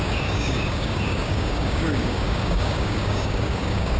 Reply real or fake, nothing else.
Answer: fake